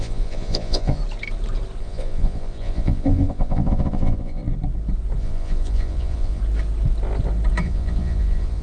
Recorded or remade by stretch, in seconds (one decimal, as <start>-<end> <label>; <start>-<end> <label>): 0.0-1.0 remade; 1.0-1.8 recorded; 1.8-4.4 remade; 4.4-5.2 recorded; 5.2-6.4 remade; 6.4-7.6 recorded; 7.6-8.6 remade